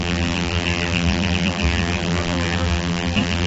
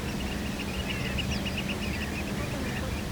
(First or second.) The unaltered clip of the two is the second